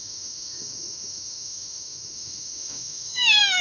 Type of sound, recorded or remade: remade